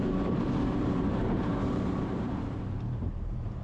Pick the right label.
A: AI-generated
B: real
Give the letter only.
A